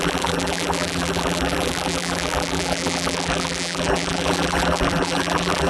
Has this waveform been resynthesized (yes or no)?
yes